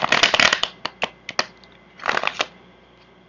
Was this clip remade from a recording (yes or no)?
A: no